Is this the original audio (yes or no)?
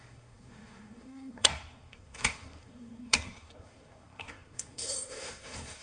no